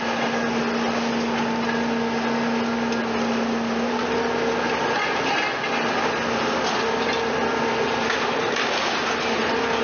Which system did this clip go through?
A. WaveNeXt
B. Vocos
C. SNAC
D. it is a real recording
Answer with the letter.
D